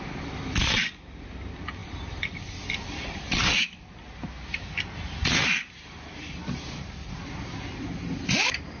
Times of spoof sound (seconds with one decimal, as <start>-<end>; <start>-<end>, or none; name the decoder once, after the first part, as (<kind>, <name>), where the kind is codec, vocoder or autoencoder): 1.8-2.5 (vocoder, BigVGAN v2)